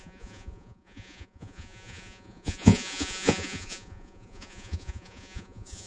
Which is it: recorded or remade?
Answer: remade